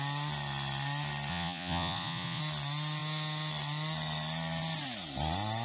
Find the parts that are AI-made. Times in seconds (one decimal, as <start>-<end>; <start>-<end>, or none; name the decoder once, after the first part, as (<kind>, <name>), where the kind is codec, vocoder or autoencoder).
1.3-2.4 (vocoder, Vocos)